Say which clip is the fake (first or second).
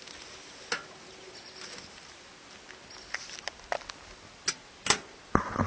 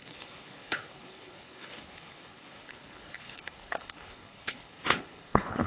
second